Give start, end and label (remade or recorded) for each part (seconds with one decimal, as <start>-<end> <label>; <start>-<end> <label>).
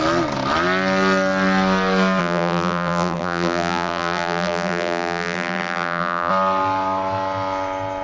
0.0-2.2 recorded; 2.2-6.3 remade; 6.3-8.0 recorded